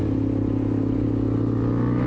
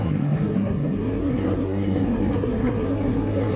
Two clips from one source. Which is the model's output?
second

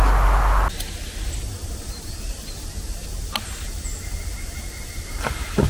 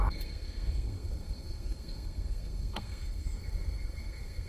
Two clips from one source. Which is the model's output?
second